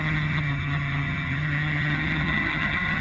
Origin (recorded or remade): remade